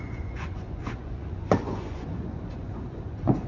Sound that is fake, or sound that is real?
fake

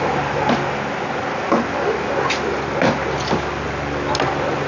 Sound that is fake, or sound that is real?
real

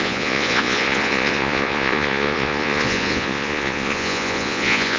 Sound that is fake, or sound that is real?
fake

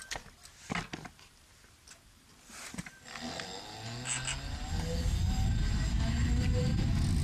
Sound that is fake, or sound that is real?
real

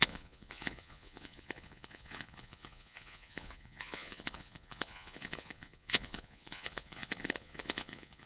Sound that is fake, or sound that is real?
fake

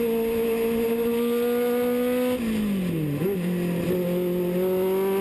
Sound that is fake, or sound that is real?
real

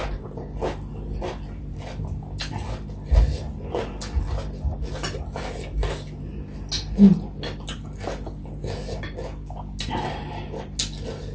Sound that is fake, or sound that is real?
real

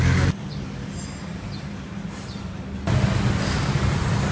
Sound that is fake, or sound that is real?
real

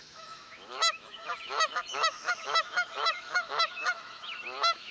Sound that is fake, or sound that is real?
fake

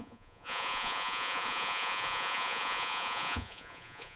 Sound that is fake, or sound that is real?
fake